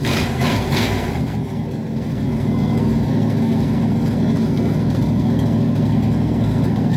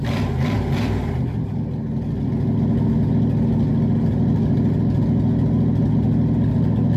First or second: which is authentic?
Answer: second